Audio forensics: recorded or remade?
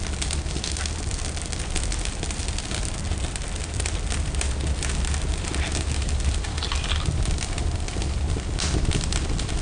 recorded